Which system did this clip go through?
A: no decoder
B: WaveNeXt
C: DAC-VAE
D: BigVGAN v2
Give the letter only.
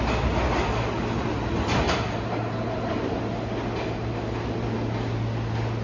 A